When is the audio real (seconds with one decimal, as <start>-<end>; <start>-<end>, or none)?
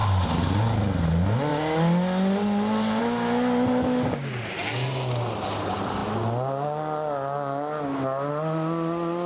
0.0-9.3